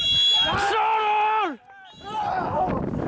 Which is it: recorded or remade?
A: recorded